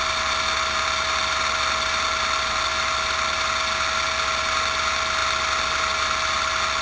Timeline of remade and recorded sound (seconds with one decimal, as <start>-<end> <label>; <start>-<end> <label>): 0.0-6.8 recorded